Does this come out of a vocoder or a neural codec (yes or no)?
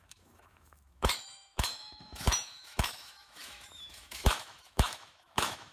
yes